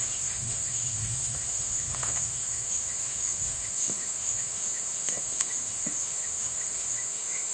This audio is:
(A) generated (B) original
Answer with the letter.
A